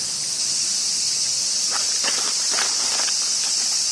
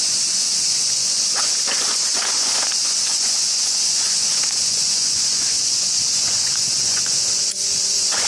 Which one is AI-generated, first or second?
second